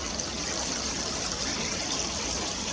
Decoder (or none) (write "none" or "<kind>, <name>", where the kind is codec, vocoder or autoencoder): vocoder, BigVGAN v2